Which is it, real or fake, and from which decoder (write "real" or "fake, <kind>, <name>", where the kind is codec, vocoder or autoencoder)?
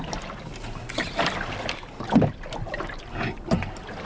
real